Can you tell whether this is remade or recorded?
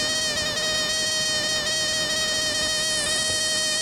recorded